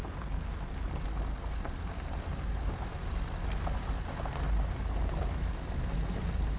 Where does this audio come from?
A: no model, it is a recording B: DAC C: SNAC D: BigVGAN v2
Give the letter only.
A